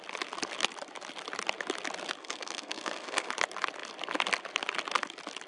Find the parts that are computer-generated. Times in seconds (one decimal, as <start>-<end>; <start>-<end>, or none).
2.2-3.3